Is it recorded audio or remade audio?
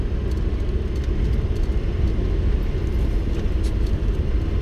recorded